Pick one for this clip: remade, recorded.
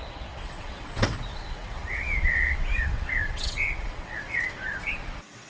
remade